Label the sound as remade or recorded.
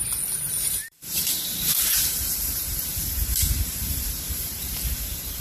remade